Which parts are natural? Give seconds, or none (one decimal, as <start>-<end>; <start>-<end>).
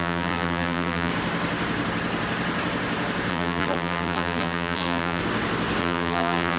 1.1-3.3; 5.2-5.8